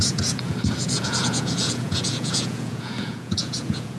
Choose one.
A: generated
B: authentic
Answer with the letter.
A